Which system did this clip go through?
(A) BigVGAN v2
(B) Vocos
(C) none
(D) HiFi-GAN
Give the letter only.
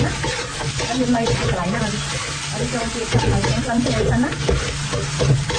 C